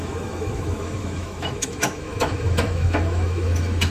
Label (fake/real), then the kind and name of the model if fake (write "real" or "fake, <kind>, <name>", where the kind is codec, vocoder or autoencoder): fake, autoencoder, DAC-VAE